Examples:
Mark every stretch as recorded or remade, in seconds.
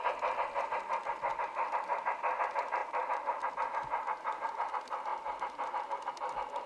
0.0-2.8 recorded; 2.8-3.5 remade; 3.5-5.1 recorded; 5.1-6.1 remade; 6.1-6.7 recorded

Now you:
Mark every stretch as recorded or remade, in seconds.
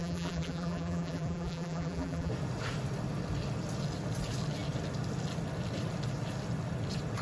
0.0-2.3 remade; 2.3-7.2 recorded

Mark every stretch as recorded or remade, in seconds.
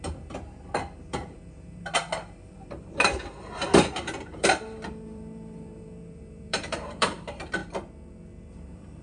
0.0-7.6 remade; 7.6-8.5 recorded; 8.5-9.0 remade